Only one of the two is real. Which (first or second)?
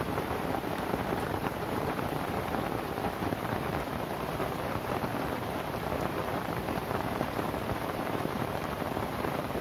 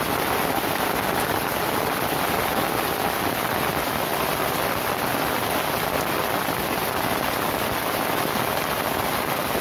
second